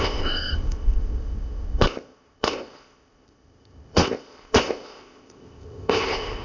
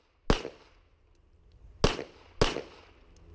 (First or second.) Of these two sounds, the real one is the second